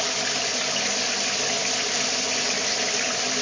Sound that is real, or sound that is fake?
real